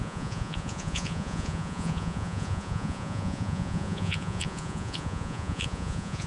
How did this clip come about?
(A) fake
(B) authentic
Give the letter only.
A